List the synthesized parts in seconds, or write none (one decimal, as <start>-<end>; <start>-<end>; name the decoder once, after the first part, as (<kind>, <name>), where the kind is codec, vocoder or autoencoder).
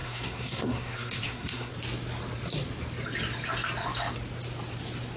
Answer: 0.0-1.7 (codec, SNAC)